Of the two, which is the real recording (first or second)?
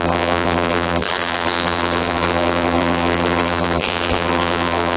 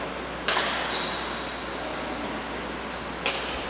second